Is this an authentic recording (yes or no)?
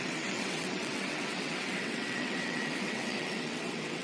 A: no